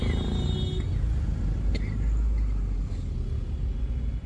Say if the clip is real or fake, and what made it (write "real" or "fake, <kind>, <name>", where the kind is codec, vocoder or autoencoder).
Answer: real